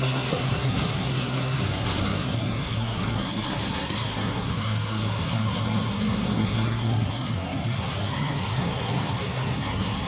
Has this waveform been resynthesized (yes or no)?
yes